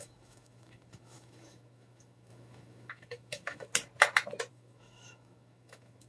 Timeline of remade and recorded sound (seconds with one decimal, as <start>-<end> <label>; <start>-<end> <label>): 0.0-3.7 remade; 3.7-4.5 recorded; 4.5-6.1 remade